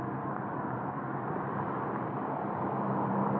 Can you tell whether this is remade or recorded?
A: remade